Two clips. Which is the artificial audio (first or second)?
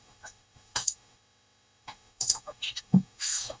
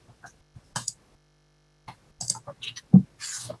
first